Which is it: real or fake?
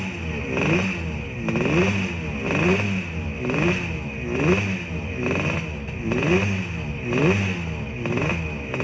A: real